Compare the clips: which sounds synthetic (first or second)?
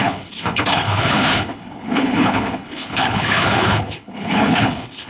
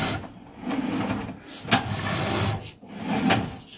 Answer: first